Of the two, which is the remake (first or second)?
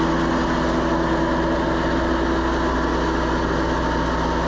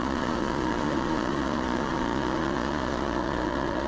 second